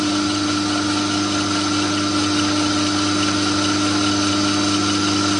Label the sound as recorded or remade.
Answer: recorded